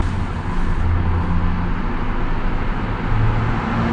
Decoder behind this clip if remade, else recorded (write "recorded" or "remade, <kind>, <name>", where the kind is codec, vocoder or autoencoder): recorded